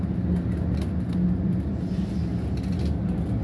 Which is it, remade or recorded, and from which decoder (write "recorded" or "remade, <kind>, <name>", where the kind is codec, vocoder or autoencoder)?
recorded